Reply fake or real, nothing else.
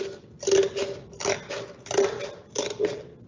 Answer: real